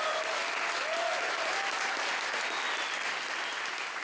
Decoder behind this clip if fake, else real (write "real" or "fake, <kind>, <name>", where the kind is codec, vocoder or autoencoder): real